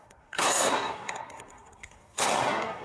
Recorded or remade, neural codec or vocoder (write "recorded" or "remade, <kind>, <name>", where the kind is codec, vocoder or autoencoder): remade, codec, SNAC